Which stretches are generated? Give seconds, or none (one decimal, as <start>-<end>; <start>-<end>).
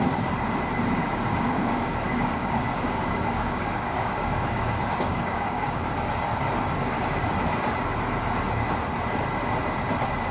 1.0-5.8